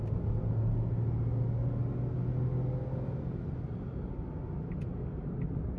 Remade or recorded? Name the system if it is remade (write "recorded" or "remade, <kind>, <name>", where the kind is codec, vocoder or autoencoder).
recorded